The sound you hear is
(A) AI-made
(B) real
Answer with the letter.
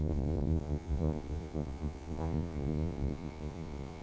A